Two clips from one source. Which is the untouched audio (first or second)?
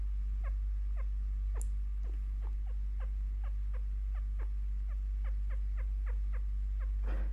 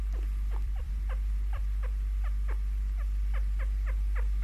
first